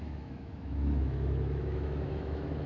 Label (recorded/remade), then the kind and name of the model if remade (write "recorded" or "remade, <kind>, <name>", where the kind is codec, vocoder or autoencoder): remade, autoencoder, DAC-VAE